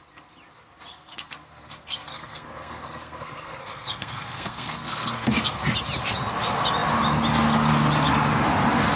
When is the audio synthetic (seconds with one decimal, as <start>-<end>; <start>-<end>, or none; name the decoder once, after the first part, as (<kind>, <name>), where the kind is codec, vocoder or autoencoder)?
0.9-5.6 (codec, SNAC)